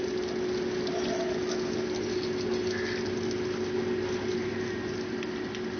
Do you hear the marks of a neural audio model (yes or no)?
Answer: no